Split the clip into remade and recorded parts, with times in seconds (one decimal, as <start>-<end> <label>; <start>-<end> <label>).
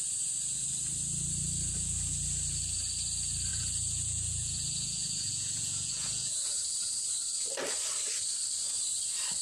0.0-3.5 recorded; 3.5-6.9 remade; 6.9-9.4 recorded